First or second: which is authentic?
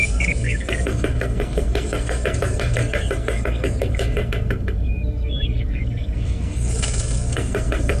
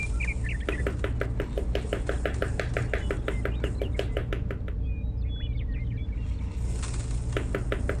second